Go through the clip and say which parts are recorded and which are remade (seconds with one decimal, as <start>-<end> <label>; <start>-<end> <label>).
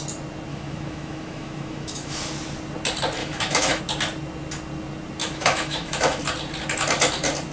0.0-0.5 recorded; 0.5-2.2 remade; 2.2-3.2 recorded; 3.2-3.8 remade; 3.8-5.2 recorded; 5.2-6.2 remade; 6.2-7.5 recorded